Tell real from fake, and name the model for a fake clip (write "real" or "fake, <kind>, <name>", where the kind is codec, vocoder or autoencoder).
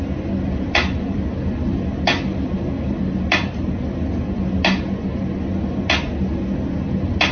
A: real